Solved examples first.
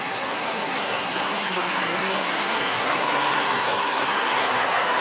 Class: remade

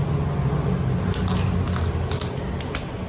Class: recorded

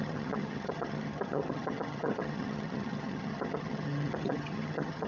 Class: remade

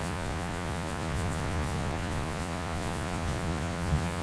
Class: remade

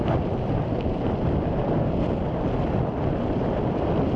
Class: remade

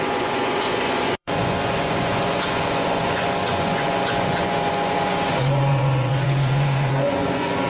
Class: remade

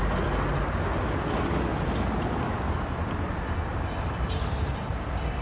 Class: recorded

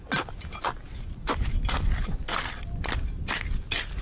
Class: recorded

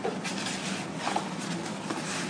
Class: recorded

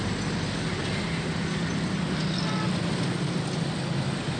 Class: recorded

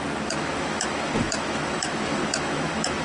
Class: remade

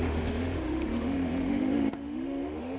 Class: remade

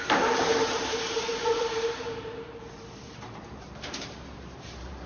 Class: remade